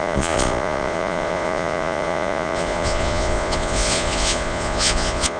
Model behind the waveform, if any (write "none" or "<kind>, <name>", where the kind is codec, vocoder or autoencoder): vocoder, Vocos